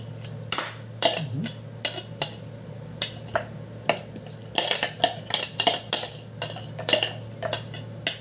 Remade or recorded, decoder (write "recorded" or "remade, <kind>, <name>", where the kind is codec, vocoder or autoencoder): recorded